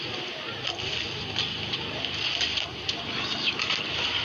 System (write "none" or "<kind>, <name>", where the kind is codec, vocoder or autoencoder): none